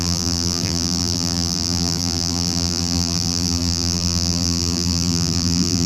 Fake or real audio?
fake